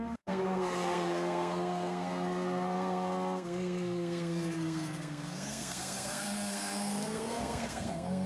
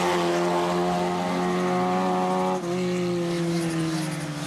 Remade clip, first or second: first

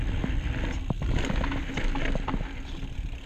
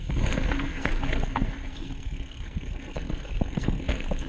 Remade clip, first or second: second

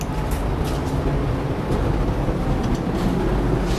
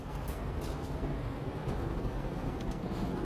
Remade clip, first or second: second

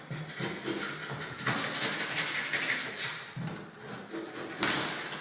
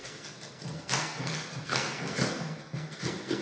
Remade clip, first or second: second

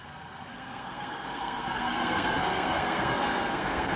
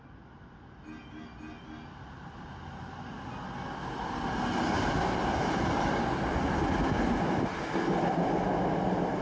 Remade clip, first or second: first